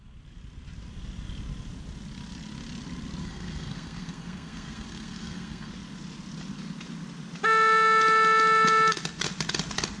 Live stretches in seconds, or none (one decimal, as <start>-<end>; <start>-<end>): 0.0-3.2; 5.7-10.0